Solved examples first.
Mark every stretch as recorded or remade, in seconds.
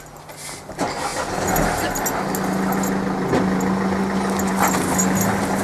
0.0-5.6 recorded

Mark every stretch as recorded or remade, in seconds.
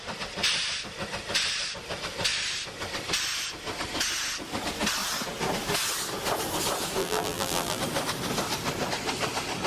0.0-7.0 recorded; 7.0-7.8 remade; 7.8-9.7 recorded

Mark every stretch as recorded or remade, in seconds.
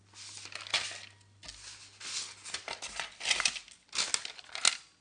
0.0-5.0 recorded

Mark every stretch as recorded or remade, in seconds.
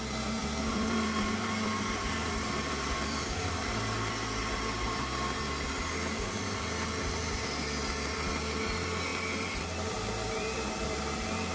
0.0-0.4 recorded; 0.4-1.5 remade; 1.5-2.2 recorded; 2.2-3.5 remade; 3.5-9.1 recorded; 9.1-11.5 remade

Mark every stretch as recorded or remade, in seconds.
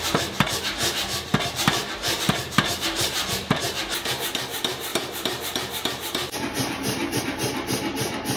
0.0-1.3 recorded; 1.3-3.6 remade; 3.6-4.9 recorded; 4.9-7.2 remade; 7.2-8.4 recorded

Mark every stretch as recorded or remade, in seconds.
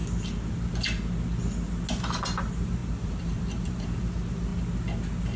0.0-1.9 recorded; 1.9-4.5 remade; 4.5-5.4 recorded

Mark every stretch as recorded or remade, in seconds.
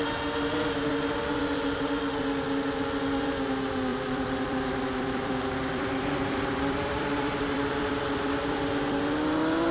0.0-1.4 recorded; 1.4-2.0 remade; 2.0-3.9 recorded; 3.9-9.0 remade; 9.0-9.7 recorded